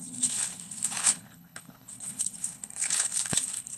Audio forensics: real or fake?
fake